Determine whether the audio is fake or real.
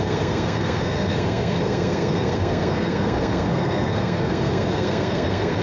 fake